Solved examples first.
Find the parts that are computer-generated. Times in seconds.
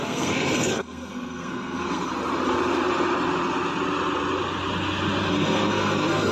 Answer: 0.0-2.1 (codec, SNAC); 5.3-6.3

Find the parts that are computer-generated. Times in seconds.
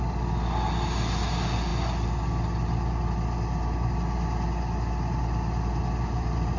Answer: none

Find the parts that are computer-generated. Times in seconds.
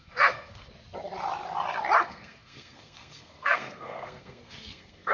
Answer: 0.0-0.7 (codec, SNAC); 2.0-5.1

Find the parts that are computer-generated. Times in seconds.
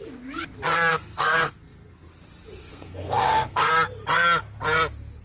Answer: 0.9-2.1 (codec, SNAC); 2.6-3.7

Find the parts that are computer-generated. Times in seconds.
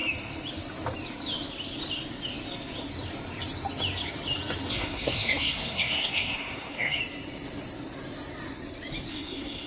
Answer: 4.7-7.0 (codec, SNAC); 9.1-9.7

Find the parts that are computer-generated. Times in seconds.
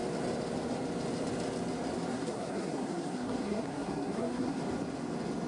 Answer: 2.1-4.6 (codec, SNAC)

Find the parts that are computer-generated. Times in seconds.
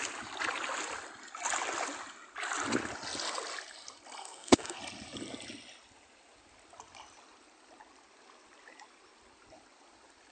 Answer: 4.2-4.8 (codec, SNAC)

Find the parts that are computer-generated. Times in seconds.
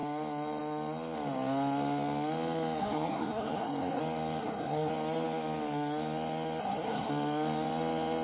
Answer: 2.8-4.0 (codec, SNAC); 4.4-4.9; 6.6-7.1